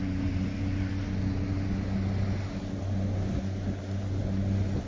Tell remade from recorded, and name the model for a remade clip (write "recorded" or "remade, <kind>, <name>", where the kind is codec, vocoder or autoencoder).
recorded